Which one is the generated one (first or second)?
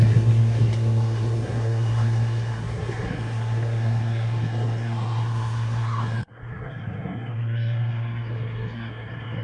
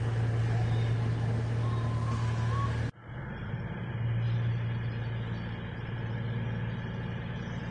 first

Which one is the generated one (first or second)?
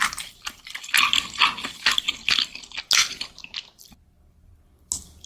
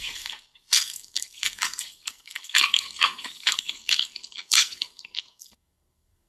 second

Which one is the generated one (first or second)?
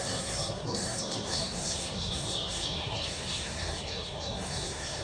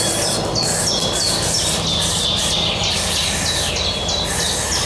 first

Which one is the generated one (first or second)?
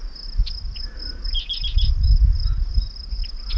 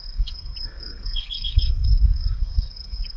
second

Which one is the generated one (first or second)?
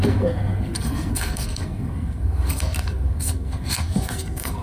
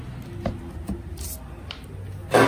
first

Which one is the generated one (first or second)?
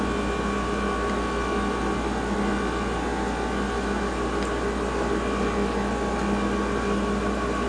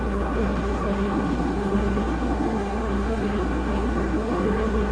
second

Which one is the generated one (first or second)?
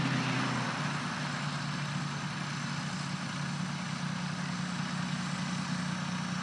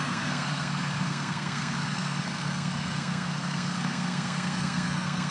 second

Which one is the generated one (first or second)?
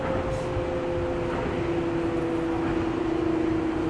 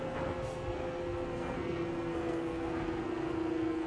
second